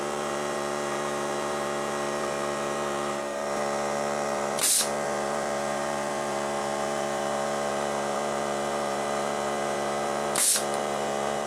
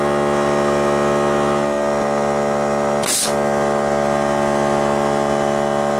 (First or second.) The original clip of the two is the second